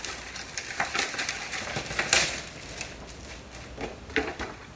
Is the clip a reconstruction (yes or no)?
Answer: no